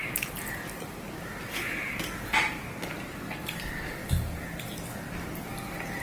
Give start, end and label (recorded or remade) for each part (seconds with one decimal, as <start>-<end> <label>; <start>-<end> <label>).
0.0-6.0 recorded